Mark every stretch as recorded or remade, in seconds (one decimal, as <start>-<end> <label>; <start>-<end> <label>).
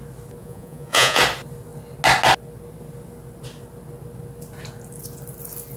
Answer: 0.0-0.4 recorded; 0.4-1.2 remade; 1.2-5.8 recorded